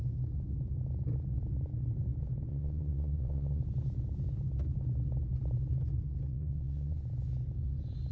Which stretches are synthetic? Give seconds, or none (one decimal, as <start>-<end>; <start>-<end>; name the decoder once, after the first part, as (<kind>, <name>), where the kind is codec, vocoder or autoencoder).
2.5-3.6 (vocoder, Vocos); 6.3-7.0